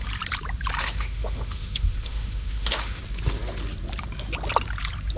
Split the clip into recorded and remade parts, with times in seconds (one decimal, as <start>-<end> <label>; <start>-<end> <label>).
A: 0.0-0.8 recorded; 0.8-3.0 remade; 3.0-5.2 recorded